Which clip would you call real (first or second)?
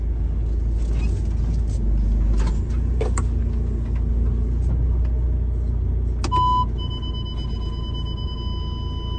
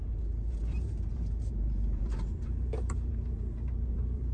first